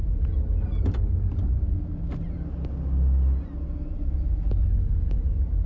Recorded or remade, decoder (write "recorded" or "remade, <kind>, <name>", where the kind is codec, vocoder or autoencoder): recorded